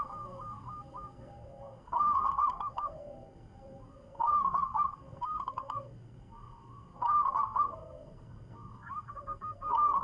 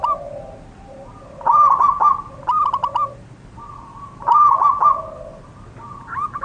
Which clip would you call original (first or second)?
second